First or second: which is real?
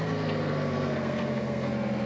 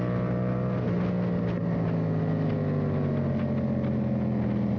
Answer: second